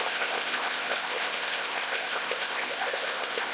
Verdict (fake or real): fake